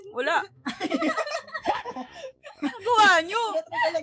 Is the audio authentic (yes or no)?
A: no